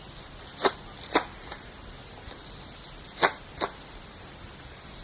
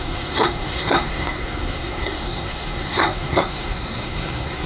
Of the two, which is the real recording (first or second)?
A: first